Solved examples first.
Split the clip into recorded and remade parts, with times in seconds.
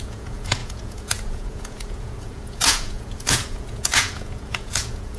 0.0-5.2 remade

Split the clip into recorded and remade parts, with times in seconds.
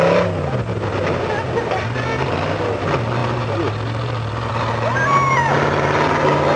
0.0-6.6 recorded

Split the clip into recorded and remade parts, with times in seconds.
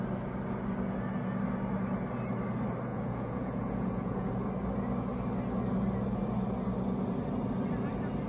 0.0-2.9 recorded; 2.9-4.3 remade; 4.3-8.3 recorded